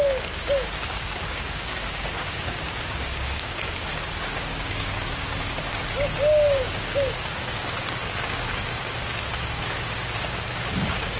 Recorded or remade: remade